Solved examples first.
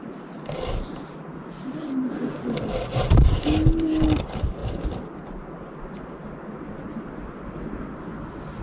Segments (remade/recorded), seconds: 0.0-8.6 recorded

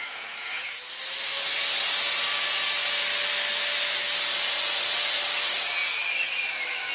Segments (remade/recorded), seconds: 0.0-1.8 remade; 1.8-5.9 recorded; 5.9-6.9 remade

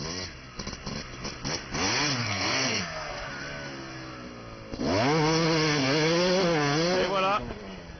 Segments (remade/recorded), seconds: 0.0-2.2 recorded; 2.2-3.3 remade; 3.3-8.0 recorded